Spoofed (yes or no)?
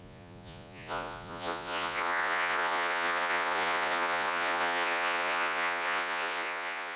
yes